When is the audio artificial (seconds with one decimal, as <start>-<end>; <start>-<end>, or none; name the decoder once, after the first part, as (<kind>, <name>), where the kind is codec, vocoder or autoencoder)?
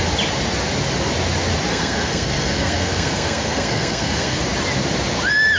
1.7-4.4 (codec, SNAC)